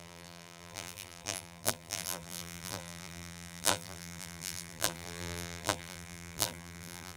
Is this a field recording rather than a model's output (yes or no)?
no